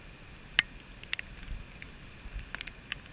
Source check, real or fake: real